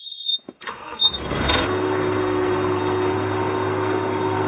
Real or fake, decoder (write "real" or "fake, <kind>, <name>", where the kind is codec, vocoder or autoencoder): fake, codec, SNAC